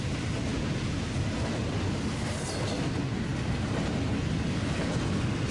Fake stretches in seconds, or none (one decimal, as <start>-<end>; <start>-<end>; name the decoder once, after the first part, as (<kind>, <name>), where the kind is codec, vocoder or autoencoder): none